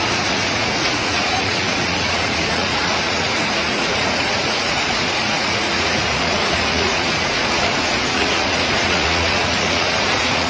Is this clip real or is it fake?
fake